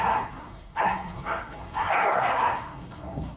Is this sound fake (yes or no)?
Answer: yes